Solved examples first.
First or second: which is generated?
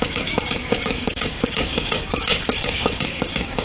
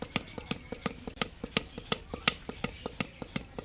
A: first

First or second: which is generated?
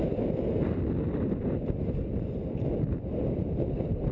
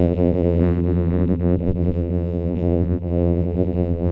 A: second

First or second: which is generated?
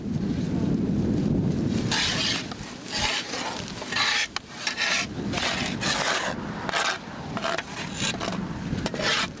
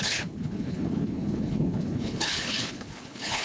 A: second